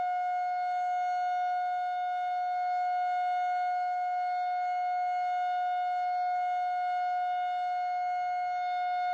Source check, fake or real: real